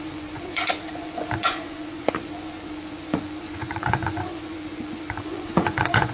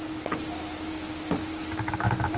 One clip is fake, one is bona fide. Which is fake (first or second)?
first